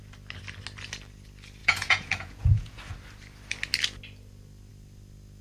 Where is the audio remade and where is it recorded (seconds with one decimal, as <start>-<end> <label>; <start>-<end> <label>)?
0.0-1.6 recorded; 1.6-2.8 remade; 2.8-5.4 recorded